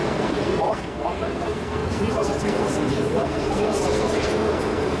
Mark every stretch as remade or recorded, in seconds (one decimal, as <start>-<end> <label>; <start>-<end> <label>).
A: 0.0-5.0 remade